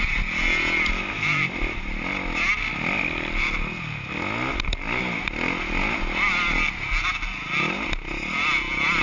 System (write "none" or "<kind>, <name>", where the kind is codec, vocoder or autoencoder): none